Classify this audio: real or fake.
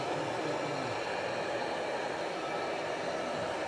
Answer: real